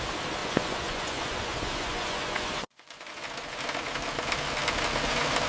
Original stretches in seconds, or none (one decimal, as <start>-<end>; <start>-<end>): 0.0-0.4; 3.1-5.5